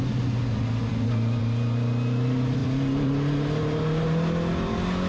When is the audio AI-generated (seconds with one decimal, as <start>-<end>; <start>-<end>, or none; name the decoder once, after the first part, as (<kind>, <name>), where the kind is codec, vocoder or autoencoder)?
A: none